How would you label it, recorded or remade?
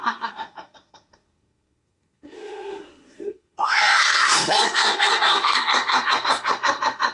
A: remade